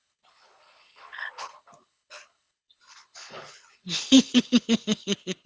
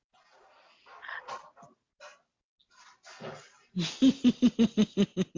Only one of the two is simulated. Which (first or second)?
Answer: first